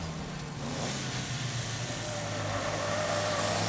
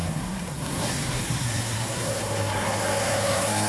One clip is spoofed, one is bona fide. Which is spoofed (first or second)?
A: second